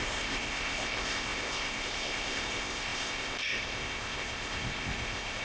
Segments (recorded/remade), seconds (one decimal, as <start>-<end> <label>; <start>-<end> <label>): 0.0-5.4 remade